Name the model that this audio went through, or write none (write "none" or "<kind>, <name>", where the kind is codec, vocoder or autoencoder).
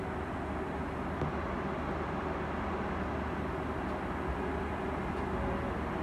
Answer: none